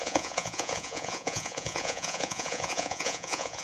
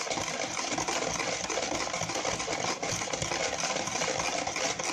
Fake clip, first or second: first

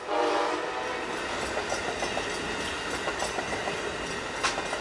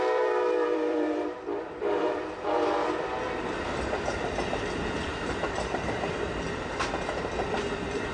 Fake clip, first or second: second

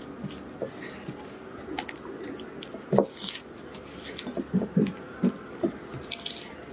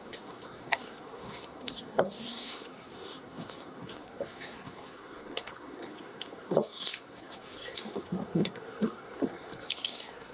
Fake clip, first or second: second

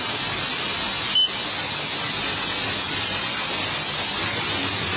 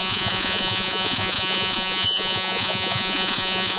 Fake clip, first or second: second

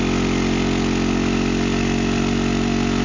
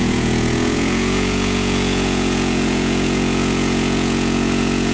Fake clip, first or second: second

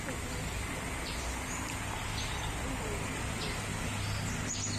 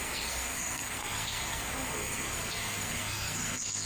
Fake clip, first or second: second